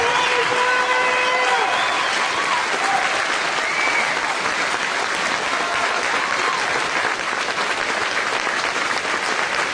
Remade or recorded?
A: recorded